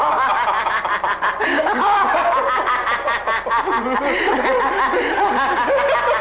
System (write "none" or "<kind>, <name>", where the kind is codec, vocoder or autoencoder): none